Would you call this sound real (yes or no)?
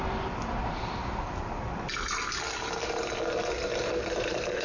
yes